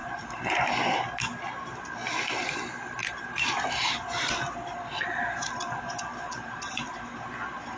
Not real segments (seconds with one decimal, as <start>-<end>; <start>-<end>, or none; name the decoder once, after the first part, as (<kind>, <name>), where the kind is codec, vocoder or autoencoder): 0.0-0.6 (vocoder, BigVGAN v2); 3.0-7.3